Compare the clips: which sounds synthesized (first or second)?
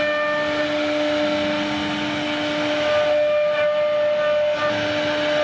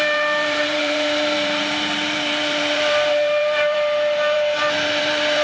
second